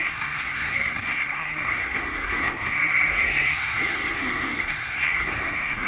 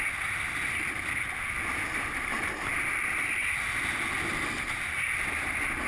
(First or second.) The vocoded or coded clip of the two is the first